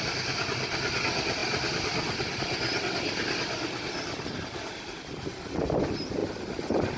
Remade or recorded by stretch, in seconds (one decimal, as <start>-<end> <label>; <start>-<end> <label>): 0.0-7.0 recorded